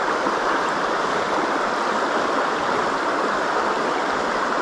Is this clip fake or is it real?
real